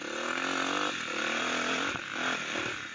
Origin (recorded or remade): recorded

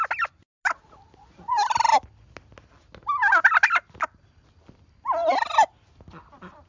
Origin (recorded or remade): recorded